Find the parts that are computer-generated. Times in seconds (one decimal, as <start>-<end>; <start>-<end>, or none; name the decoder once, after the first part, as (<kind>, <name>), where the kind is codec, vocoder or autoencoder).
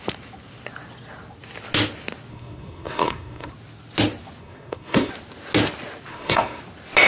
2.3-3.5 (codec, SNAC); 4.4-5.1; 6.1-6.6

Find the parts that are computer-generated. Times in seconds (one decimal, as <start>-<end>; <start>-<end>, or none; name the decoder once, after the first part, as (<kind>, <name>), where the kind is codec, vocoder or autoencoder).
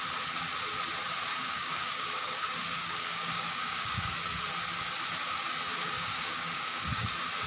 1.3-4.5 (codec, DAC); 5.7-7.1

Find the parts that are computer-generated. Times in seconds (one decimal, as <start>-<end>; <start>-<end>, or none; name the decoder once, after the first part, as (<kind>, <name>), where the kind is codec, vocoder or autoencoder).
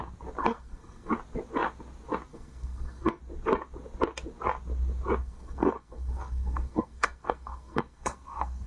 0.4-1.1 (codec, SNAC); 2.3-3.2; 5.2-8.7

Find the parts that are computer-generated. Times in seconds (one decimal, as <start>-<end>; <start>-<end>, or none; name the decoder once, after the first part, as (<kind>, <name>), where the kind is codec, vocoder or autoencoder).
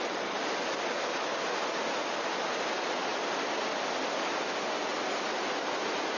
none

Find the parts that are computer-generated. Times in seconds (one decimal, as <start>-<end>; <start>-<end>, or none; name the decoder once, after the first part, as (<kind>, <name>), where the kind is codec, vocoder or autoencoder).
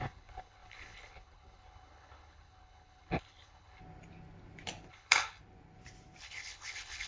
0.0-3.8 (codec, HILCodec); 4.9-5.4; 6.2-7.1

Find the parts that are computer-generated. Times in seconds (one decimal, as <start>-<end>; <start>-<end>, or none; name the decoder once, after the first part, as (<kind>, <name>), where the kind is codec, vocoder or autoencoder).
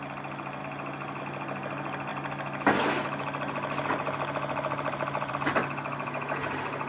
none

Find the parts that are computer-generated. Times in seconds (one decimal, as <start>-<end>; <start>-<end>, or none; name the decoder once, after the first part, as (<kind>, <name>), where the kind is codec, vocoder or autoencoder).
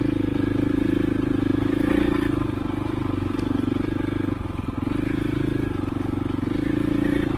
none